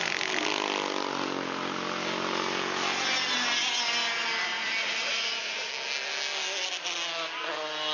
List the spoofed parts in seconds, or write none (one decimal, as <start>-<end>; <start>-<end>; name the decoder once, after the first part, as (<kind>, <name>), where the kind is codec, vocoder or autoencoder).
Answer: 4.5-5.7 (vocoder, Vocos)